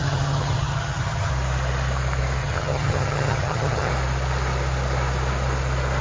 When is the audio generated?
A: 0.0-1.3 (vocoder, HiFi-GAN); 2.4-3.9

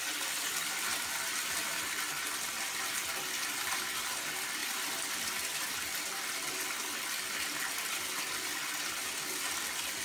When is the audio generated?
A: none